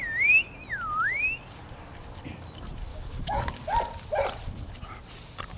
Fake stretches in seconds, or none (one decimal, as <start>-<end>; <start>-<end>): 2.9-3.4

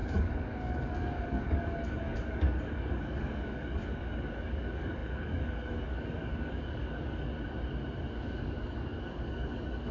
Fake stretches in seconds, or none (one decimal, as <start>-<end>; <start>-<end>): 0.0-7.3; 8.1-9.9

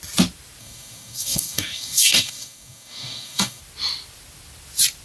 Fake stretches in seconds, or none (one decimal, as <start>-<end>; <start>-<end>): 0.6-3.6

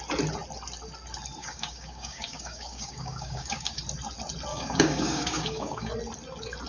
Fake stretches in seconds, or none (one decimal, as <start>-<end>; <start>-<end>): 1.4-3.8; 4.5-5.9

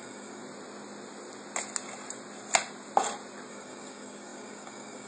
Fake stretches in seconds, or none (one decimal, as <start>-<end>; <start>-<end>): 0.0-0.4; 3.5-5.1